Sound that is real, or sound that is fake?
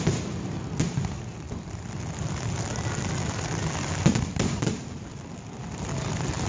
real